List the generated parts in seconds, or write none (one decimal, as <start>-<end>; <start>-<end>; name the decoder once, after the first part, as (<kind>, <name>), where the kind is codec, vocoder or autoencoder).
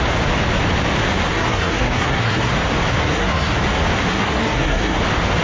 1.3-2.5 (codec, SNAC); 3.0-3.5; 4.1-5.0